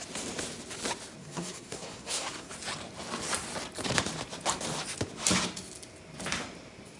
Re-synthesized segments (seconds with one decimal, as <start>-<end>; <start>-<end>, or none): 1.2-2.5